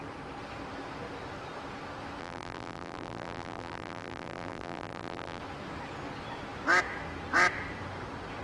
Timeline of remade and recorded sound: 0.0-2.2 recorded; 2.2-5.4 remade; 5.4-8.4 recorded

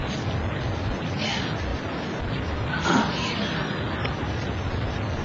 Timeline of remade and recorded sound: 0.0-5.2 recorded

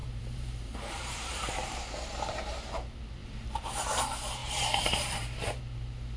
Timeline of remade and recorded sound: 0.0-2.6 remade; 2.6-3.2 recorded; 3.2-4.0 remade; 4.0-4.4 recorded; 4.4-5.6 remade; 5.6-6.2 recorded

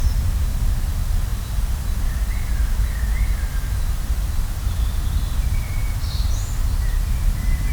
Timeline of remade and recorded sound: 0.0-7.7 recorded

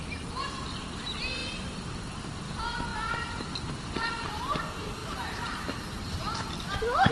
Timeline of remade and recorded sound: 0.0-1.4 recorded; 1.4-2.3 remade; 2.3-5.0 recorded; 5.0-7.1 remade

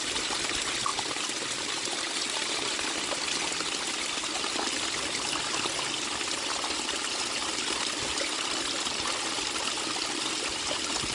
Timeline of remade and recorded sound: 0.0-0.9 recorded; 0.9-2.1 remade; 2.1-11.1 recorded